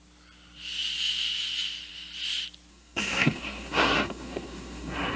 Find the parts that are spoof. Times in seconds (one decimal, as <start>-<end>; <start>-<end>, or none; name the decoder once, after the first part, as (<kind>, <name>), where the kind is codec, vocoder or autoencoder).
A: 2.7-5.2 (codec, SNAC)